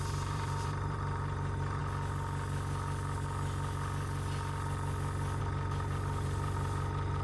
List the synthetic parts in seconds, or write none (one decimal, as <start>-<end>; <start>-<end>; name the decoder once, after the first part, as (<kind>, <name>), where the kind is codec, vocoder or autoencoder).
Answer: 0.0-1.8 (vocoder, BigVGAN v2); 5.4-7.2